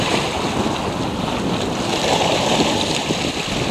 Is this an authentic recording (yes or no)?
yes